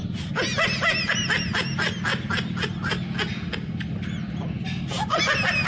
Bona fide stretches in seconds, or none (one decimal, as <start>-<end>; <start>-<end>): 0.0-5.7